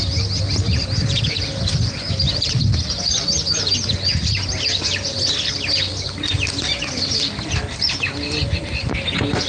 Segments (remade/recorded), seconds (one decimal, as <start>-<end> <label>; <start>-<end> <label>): 0.0-9.5 recorded